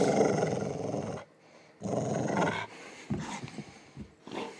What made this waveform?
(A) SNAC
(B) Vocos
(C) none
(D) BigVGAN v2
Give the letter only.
C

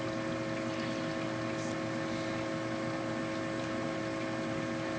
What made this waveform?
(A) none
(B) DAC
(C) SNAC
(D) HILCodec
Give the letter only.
A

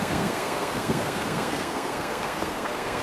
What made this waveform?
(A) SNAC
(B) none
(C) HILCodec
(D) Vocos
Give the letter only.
A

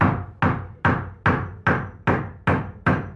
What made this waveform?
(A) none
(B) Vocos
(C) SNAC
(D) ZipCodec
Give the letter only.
A